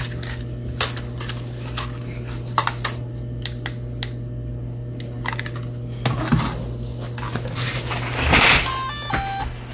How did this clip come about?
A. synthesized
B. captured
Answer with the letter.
B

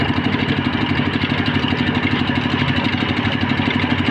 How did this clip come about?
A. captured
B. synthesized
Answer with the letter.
A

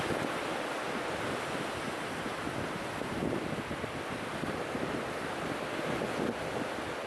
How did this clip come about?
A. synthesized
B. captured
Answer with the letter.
B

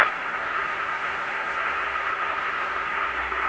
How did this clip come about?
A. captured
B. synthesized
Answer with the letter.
B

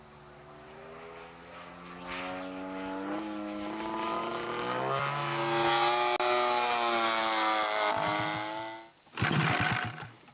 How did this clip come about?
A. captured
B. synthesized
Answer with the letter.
A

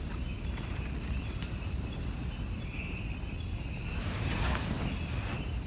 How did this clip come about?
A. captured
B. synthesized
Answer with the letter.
A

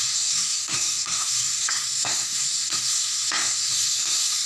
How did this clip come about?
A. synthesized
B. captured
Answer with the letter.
A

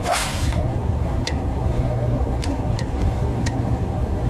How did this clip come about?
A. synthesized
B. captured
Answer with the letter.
A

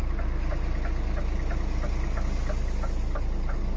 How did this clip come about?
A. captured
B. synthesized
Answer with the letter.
A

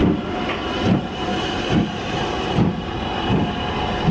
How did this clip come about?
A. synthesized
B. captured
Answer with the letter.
B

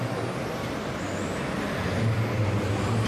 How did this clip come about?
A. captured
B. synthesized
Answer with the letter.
A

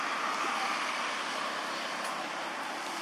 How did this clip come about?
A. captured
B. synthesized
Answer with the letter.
A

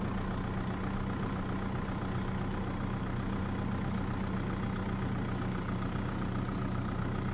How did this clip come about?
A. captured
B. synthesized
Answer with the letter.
A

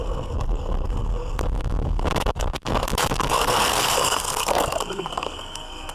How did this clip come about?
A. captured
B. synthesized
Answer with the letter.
B